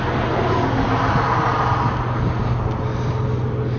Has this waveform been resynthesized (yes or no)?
no